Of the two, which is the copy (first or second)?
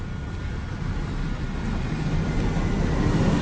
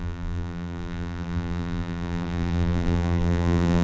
second